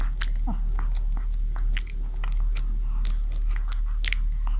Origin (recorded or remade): recorded